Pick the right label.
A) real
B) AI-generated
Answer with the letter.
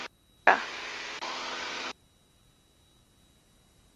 A